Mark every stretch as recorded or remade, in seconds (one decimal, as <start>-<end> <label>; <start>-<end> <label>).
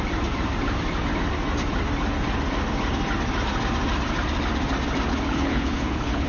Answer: 0.0-5.1 recorded; 5.1-6.3 remade